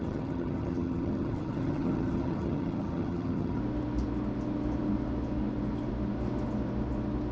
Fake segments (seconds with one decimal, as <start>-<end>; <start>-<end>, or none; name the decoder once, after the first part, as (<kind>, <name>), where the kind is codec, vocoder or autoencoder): 0.0-3.6 (vocoder, HiFi-GAN)